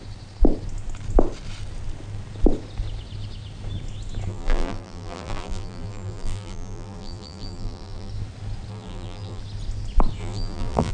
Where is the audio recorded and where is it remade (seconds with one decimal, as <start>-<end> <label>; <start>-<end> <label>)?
0.0-4.3 recorded; 4.3-8.1 remade; 8.1-8.7 recorded; 8.7-9.4 remade; 9.4-10.2 recorded; 10.2-10.9 remade